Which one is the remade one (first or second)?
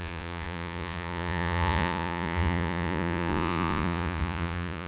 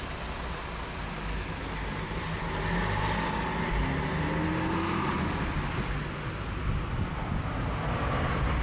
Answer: first